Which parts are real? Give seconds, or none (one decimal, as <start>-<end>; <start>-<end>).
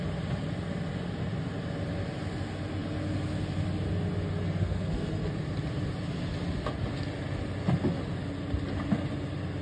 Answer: 0.0-4.6; 5.3-9.6